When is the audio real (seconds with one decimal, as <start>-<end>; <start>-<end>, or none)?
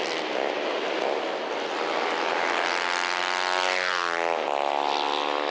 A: 0.0-5.5